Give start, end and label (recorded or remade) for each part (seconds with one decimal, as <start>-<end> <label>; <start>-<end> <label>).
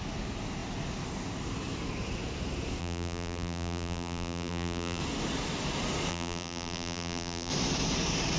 0.0-2.8 recorded; 2.8-5.0 remade; 5.0-6.1 recorded; 6.1-7.5 remade; 7.5-8.4 recorded